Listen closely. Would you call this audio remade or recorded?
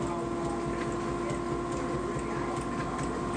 recorded